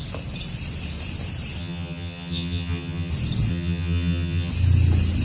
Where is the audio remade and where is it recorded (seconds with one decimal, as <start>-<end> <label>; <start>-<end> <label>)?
0.0-1.6 recorded; 1.6-3.1 remade; 3.1-3.5 recorded; 3.5-4.5 remade; 4.5-5.2 recorded